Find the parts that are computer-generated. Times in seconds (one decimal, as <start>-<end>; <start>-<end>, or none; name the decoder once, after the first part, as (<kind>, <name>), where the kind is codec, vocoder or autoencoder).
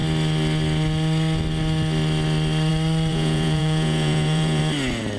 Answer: 3.1-4.6 (vocoder, Vocos)